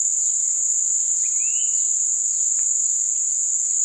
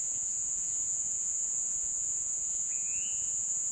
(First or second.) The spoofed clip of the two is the second